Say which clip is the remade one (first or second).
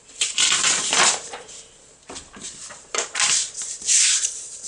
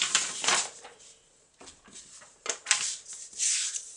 first